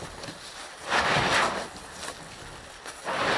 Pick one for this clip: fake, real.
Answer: real